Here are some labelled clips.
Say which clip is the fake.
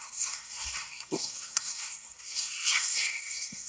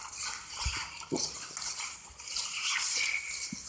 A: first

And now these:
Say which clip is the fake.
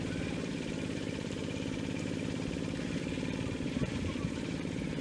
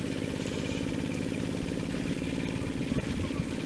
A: first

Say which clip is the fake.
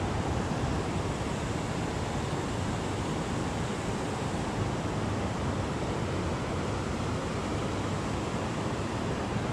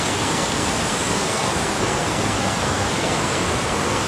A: second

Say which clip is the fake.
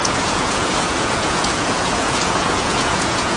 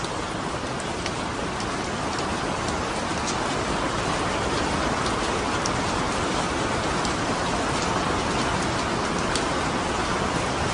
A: first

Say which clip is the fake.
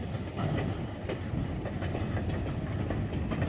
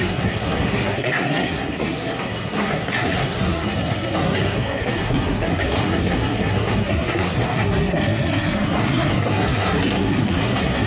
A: second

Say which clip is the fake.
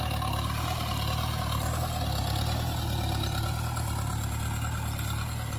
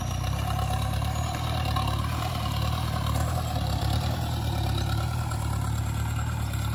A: second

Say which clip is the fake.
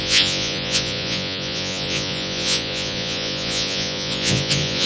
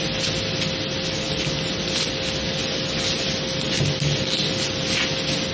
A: first